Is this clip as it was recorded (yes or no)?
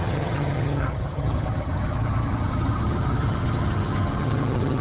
no